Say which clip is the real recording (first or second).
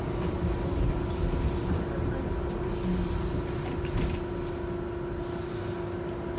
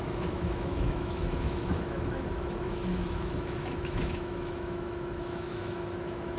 first